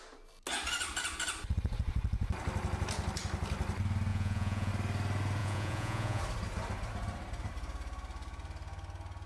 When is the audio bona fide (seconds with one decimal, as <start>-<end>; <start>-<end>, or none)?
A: 0.0-4.1; 4.7-5.4; 6.2-9.3